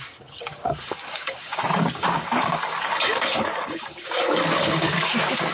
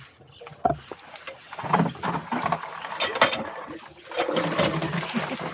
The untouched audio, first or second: second